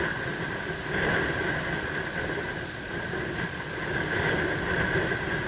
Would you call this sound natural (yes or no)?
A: yes